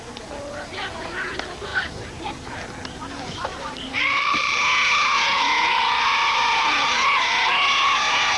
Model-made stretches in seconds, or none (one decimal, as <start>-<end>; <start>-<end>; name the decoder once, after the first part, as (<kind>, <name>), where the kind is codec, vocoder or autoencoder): 1.7-2.3 (vocoder, BigVGAN v2); 3.5-4.6